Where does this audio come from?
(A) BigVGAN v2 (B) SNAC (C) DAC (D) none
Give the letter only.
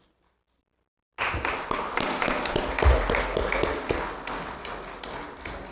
D